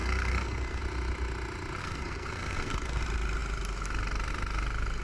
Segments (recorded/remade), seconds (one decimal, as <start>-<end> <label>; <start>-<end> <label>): 0.0-0.8 remade; 0.8-1.8 recorded; 1.8-3.0 remade; 3.0-5.0 recorded